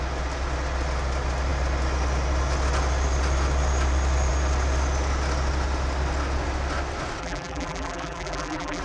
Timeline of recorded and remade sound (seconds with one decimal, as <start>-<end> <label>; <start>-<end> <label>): 0.0-7.2 recorded; 7.2-8.8 remade